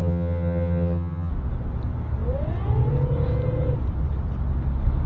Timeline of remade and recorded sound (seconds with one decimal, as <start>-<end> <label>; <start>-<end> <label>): 0.0-1.3 remade; 1.3-5.1 recorded